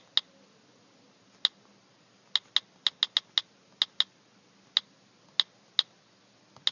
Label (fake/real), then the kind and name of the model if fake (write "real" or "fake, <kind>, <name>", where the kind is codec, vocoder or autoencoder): real